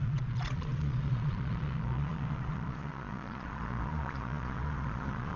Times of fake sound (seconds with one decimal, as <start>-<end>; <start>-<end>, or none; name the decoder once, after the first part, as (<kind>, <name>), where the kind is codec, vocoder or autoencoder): 0.0-5.4 (vocoder, Vocos)